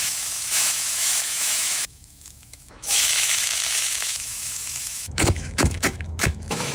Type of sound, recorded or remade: remade